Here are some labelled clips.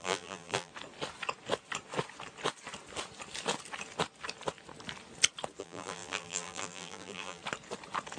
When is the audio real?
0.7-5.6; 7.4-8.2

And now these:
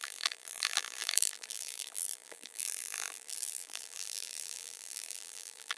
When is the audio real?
none

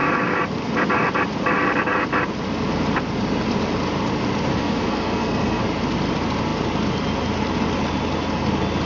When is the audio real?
0.0-4.5; 5.6-8.9

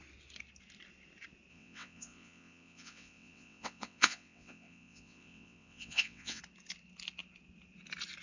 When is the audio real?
0.0-1.5; 6.4-8.2

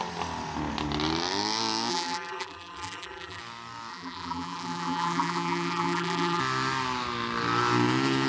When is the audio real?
0.0-1.9; 3.4-3.9; 6.4-8.3

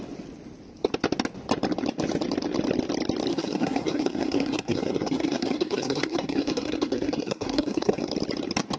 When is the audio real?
0.0-3.3; 8.1-8.8